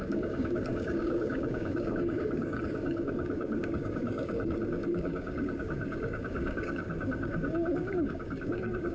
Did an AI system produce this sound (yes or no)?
yes